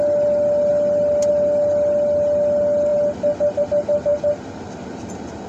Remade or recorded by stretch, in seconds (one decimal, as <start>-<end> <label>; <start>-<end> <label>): 0.0-5.5 recorded